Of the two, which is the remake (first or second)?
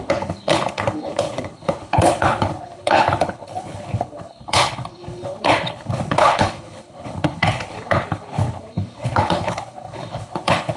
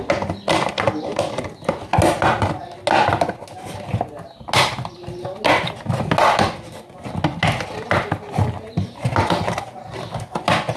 first